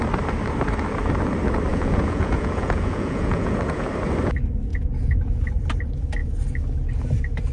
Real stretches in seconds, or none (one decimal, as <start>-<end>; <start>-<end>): 0.0-1.7; 3.9-4.7; 5.6-7.5